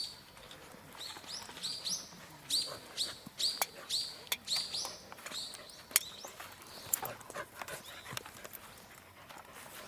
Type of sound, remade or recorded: recorded